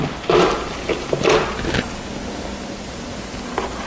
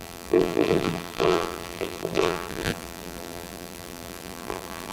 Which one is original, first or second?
first